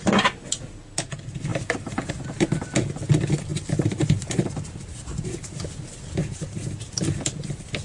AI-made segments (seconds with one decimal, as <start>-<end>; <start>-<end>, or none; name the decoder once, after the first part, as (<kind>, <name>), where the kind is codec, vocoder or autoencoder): 1.5-2.1 (vocoder, BigVGAN v2); 6.2-7.0